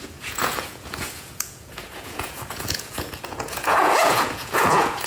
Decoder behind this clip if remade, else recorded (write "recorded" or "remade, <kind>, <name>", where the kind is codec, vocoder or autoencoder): remade, vocoder, Vocos